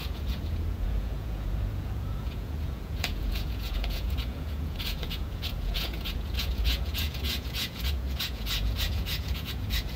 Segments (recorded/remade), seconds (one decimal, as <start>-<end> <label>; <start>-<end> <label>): 0.0-10.0 remade